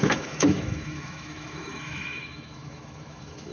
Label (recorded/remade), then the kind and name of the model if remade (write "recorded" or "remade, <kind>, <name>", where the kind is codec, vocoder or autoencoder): remade, autoencoder, DAC-VAE